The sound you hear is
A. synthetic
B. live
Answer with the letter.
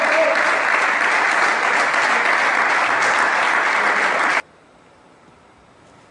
B